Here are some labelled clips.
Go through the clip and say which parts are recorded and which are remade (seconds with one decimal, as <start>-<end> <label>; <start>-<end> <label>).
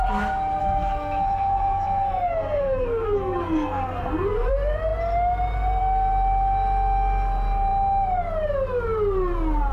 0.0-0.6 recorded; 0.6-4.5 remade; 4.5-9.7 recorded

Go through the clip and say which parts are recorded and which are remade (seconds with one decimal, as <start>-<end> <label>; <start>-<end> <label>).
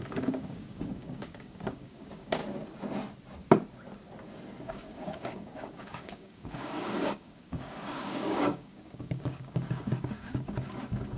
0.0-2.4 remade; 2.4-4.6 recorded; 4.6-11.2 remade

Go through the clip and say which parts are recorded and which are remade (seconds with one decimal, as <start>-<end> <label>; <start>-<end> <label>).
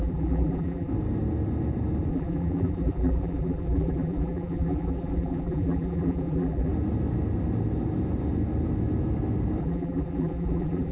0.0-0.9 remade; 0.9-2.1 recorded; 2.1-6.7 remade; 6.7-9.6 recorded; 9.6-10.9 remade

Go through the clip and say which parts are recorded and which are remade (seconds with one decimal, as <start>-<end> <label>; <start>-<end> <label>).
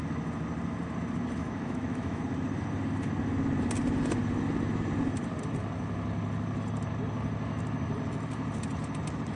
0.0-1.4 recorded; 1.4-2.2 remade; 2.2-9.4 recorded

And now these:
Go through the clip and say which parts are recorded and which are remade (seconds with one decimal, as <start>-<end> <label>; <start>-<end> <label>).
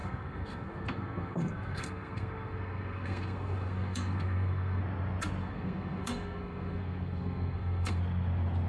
0.0-4.8 remade; 4.8-5.4 recorded; 5.4-8.0 remade; 8.0-8.7 recorded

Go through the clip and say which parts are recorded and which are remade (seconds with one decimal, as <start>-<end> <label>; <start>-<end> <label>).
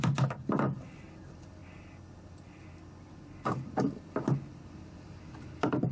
0.0-1.6 remade; 1.6-4.7 recorded; 4.7-5.9 remade